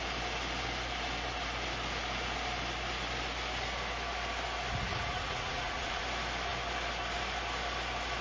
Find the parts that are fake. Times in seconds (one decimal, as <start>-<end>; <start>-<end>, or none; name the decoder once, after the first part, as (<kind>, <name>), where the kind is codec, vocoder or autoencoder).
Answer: 4.9-6.0 (vocoder, Vocos)